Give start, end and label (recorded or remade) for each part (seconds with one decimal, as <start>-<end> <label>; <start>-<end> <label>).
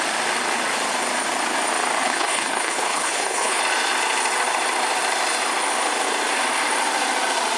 0.0-2.0 recorded; 2.0-3.6 remade; 3.6-7.6 recorded